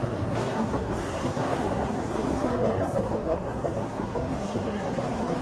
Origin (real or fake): fake